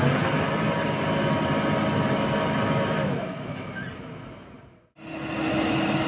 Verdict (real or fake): real